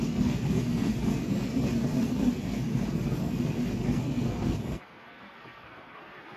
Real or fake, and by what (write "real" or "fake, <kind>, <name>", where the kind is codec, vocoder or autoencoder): fake, codec, SNAC